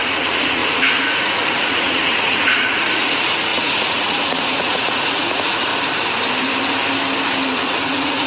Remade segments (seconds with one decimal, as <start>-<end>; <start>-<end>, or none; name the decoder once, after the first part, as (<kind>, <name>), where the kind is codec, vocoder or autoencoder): 0.0-5.7 (vocoder, Vocos); 7.5-8.3